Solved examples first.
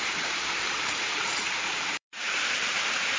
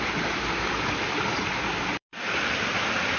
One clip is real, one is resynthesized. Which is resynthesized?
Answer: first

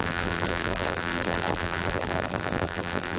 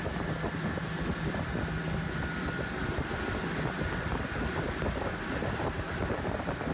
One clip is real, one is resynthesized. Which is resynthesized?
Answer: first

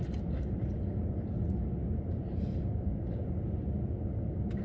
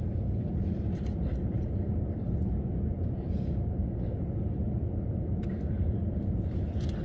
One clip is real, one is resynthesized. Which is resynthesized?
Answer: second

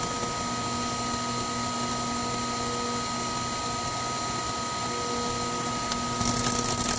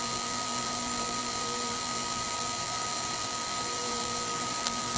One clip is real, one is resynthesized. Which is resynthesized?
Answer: second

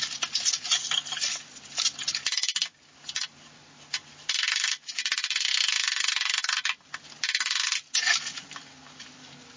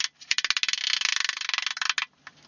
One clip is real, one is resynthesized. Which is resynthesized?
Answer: first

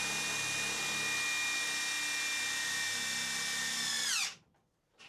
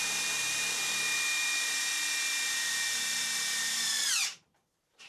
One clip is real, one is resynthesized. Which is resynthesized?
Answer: second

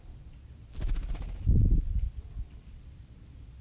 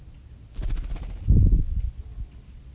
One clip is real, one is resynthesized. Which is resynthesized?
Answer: first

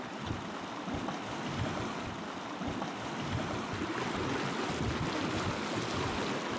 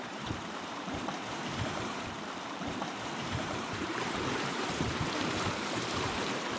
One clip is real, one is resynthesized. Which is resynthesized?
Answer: second